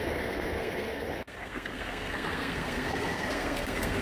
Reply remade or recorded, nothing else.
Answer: remade